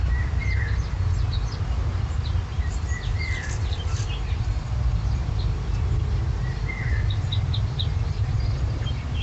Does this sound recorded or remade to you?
recorded